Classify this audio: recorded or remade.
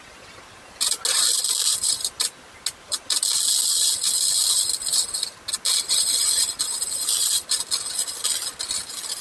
recorded